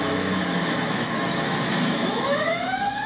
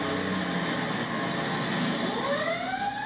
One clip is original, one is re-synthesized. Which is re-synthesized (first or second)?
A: first